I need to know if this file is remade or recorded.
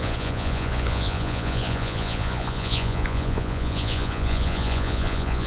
remade